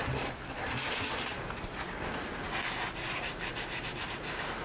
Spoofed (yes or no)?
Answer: no